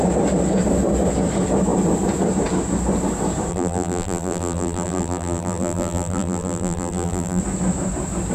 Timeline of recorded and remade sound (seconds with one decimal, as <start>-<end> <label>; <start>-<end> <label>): 0.0-3.5 recorded; 3.5-7.4 remade; 7.4-8.3 recorded